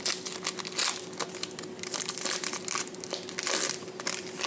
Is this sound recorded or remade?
recorded